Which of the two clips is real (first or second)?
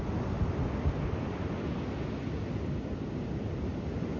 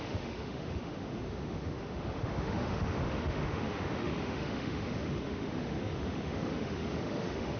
first